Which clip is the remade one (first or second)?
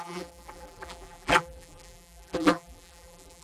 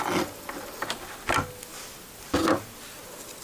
first